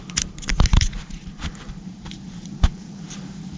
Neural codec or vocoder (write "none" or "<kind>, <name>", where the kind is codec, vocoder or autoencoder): vocoder, BigVGAN v2